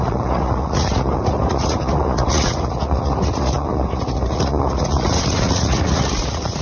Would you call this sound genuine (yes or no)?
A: no